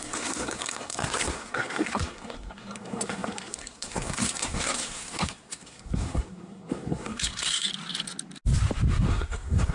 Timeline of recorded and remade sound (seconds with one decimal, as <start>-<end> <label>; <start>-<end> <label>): 0.0-7.7 remade; 7.7-8.9 recorded; 8.9-9.7 remade